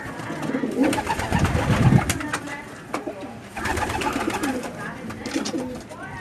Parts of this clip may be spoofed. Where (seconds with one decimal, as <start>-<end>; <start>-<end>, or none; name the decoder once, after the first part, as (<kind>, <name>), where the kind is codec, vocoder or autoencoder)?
3.7-5.1 (vocoder, BigVGAN v2)